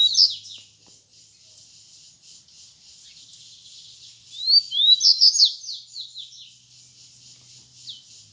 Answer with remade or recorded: recorded